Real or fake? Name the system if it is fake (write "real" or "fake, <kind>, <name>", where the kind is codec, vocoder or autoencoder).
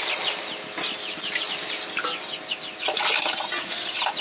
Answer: real